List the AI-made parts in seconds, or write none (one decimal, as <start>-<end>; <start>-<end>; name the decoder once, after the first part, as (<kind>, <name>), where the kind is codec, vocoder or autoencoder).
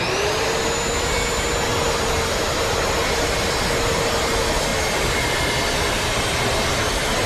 1.7-3.0 (vocoder, BigVGAN v2); 4.7-5.5